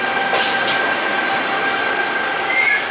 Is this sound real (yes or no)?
yes